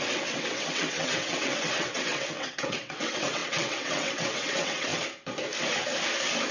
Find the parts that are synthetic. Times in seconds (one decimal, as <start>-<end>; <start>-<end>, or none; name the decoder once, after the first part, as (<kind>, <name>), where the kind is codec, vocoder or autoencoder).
0.0-4.9 (vocoder, WaveNeXt)